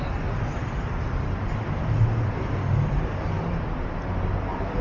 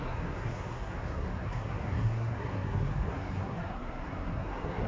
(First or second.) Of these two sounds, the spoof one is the second